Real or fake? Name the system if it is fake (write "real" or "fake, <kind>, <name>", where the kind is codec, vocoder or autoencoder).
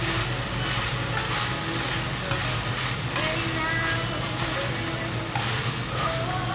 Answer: real